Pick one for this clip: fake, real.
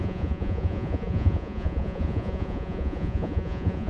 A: fake